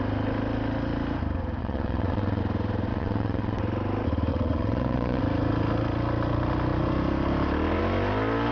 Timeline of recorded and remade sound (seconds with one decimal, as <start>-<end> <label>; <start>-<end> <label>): 0.0-1.6 recorded; 1.6-2.4 remade; 2.4-2.9 recorded; 2.9-3.6 remade; 3.6-4.3 recorded; 4.3-5.2 remade; 5.2-8.5 recorded

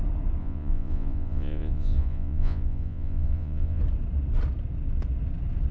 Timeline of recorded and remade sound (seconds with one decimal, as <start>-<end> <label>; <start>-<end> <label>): 0.0-0.4 recorded; 0.4-3.8 remade; 3.8-5.7 recorded

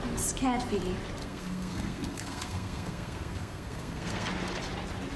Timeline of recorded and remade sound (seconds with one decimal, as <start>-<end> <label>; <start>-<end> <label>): 0.0-1.2 recorded; 1.2-4.3 remade; 4.3-5.2 recorded

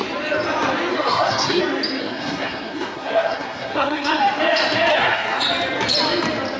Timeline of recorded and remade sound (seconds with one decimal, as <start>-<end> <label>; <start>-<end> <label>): 0.0-0.9 recorded; 0.9-1.6 remade; 1.6-2.0 recorded; 2.0-4.2 remade; 4.2-4.9 recorded; 4.9-5.5 remade; 5.5-6.6 recorded

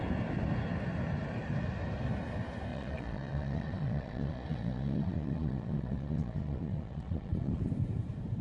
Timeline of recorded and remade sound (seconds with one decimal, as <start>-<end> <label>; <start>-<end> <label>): 0.0-2.7 recorded; 2.7-7.6 remade; 7.6-8.4 recorded

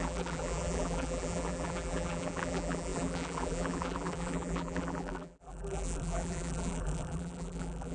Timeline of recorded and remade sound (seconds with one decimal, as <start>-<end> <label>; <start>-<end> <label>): 0.0-7.9 remade

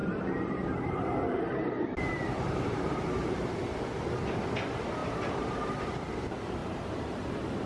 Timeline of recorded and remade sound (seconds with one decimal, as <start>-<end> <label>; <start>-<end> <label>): 0.0-3.8 remade; 3.8-5.0 recorded; 5.0-5.8 remade; 5.8-6.6 recorded; 6.6-7.3 remade; 7.3-7.7 recorded

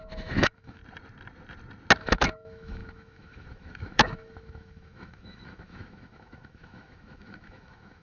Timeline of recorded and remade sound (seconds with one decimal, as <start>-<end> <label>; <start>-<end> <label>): 0.0-0.8 remade; 0.8-2.0 recorded; 2.0-8.0 remade